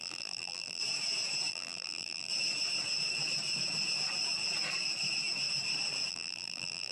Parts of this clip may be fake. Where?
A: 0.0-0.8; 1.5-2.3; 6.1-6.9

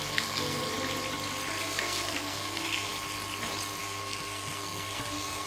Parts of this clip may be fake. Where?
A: 0.0-0.6; 1.6-2.9; 3.8-5.5

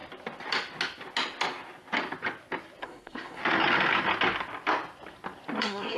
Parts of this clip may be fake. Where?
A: 2.8-3.4; 5.6-6.0

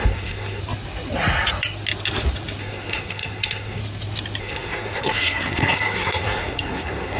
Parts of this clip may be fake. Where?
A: 0.0-0.6; 2.6-3.8; 4.4-7.2

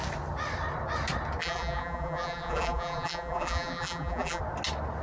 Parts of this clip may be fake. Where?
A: 1.4-4.4

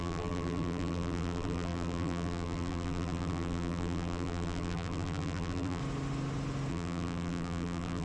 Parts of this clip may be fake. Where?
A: 0.0-5.8; 6.7-8.0

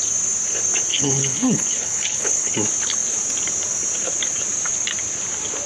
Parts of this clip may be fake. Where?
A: 0.9-2.5

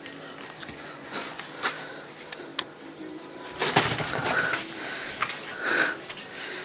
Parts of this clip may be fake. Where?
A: 0.6-1.4